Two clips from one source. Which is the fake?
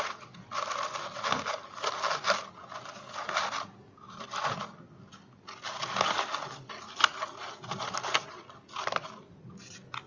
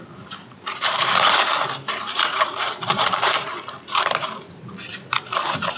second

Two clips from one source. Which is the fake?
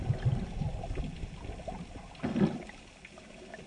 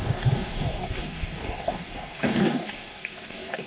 second